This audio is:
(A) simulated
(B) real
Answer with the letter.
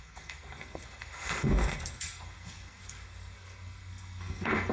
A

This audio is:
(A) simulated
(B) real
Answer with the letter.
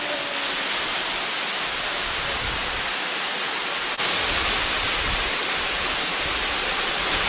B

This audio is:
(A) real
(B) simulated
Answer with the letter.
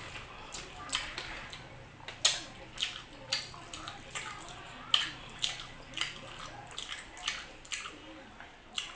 A